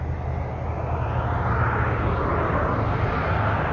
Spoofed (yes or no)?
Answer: no